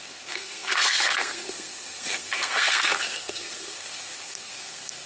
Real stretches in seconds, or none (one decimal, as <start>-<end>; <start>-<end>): none